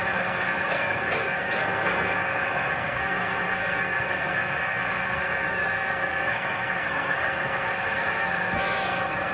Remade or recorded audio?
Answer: remade